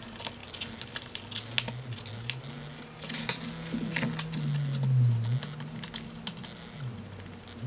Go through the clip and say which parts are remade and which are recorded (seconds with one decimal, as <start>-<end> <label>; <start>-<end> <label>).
0.0-7.7 recorded